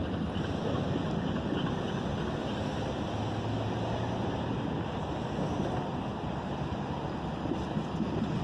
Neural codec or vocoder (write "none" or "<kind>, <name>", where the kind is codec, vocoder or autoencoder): none